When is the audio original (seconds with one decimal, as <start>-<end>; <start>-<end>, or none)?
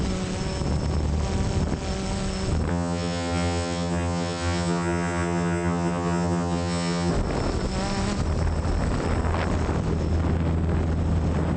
0.0-2.7; 7.1-11.6